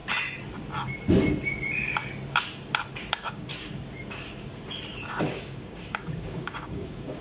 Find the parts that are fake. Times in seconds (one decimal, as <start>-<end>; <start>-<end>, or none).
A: 3.1-3.5; 5.2-7.2

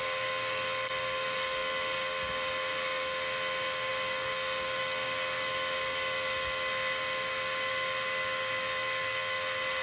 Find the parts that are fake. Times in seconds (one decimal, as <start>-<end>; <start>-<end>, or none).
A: 0.0-9.8